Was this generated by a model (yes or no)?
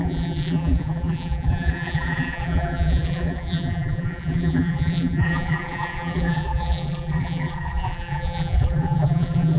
yes